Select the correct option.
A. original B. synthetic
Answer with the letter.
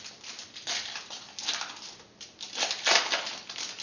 A